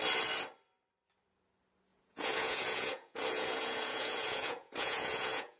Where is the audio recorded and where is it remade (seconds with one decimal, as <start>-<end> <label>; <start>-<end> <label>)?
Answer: 0.0-1.9 recorded; 1.9-5.6 remade